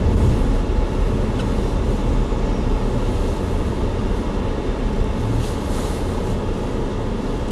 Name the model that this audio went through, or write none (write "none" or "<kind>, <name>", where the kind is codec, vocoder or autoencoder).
none